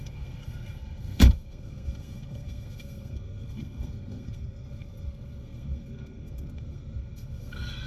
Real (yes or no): no